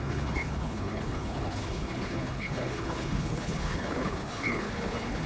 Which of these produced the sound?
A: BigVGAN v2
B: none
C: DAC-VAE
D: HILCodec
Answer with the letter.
D